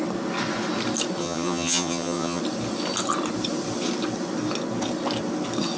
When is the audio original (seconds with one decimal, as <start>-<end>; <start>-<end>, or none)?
0.0-1.2; 2.4-5.8